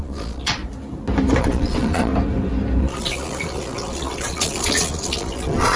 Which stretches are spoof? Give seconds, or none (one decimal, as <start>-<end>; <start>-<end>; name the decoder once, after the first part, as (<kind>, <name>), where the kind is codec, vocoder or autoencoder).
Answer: 0.0-0.6 (vocoder, Vocos); 1.4-2.1; 2.8-5.8